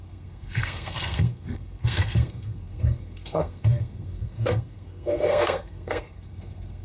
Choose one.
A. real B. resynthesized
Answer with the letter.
B